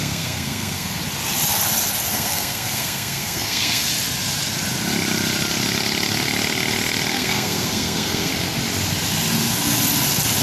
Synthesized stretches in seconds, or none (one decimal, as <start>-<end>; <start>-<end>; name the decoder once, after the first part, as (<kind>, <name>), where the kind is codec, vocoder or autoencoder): 0.0-1.0 (codec, SNAC); 2.1-3.9; 7.1-8.3